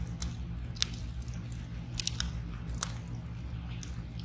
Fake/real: real